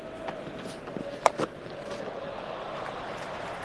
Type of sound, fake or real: real